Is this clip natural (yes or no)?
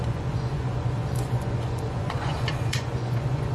no